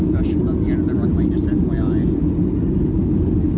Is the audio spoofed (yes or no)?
no